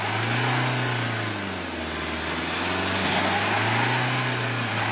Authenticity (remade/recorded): recorded